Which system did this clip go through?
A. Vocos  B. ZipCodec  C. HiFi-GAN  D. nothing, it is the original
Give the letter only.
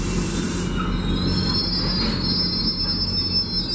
D